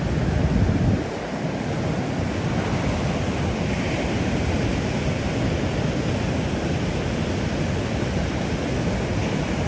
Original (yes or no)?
yes